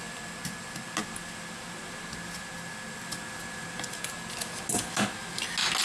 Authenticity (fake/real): real